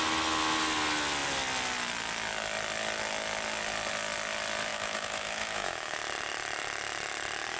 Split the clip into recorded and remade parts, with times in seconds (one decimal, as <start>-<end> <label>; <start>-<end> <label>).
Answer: 0.0-4.7 recorded; 4.7-6.0 remade; 6.0-7.6 recorded